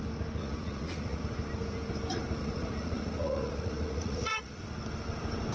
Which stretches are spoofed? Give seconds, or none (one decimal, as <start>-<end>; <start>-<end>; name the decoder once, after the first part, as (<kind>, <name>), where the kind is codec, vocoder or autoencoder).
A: 0.4-1.2 (vocoder, Vocos); 2.4-4.6